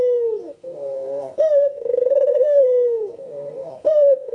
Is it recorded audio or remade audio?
remade